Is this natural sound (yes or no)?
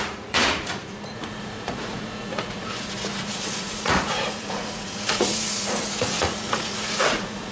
no